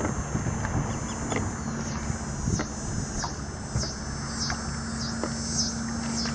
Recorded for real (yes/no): yes